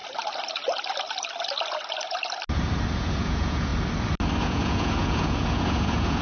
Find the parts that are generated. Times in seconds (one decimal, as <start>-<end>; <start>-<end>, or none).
2.9-3.7; 4.4-6.2